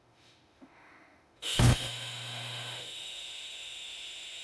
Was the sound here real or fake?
fake